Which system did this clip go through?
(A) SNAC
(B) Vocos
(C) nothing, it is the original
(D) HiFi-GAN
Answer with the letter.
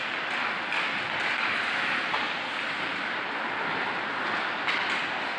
C